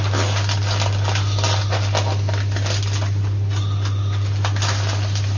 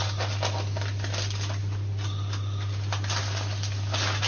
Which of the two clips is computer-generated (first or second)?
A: second